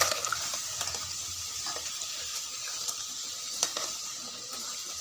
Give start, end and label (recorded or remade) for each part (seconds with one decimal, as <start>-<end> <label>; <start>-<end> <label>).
0.0-3.7 remade; 3.7-4.3 recorded; 4.3-5.0 remade